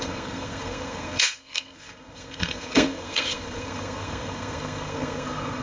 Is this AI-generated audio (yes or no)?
yes